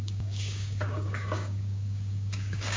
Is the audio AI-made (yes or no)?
yes